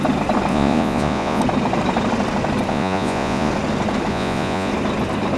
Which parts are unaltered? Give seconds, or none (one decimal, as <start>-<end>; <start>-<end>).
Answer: 0.0-0.5; 1.4-2.7; 3.5-4.1; 4.7-5.4